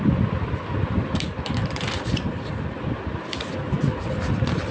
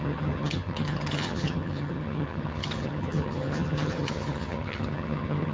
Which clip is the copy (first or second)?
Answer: second